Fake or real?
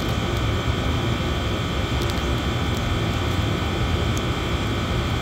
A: real